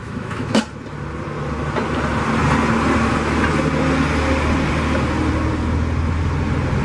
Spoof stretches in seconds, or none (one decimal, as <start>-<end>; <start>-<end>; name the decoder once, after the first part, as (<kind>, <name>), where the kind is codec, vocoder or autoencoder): 0.0-0.6 (autoencoder, DAC-VAE)